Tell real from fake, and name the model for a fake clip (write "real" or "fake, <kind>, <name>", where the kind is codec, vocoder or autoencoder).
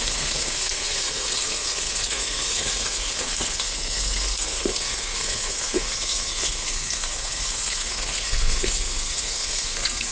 fake, codec, SNAC